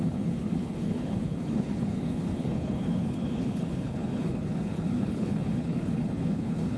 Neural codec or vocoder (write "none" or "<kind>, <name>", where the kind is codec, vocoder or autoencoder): codec, HILCodec